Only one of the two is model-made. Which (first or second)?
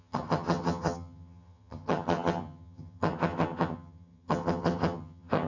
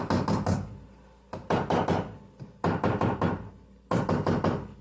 first